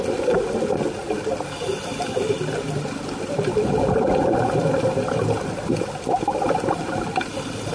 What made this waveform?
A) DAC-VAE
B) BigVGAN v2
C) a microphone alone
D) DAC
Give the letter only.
C